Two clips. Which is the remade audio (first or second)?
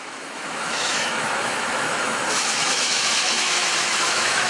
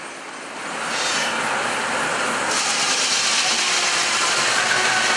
first